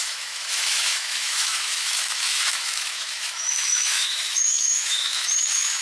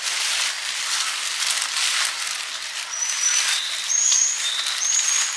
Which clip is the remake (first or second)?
first